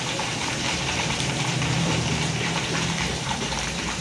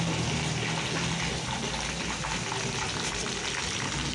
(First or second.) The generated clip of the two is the first